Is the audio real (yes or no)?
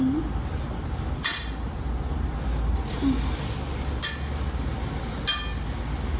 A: yes